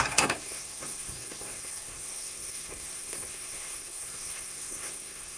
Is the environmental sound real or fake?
fake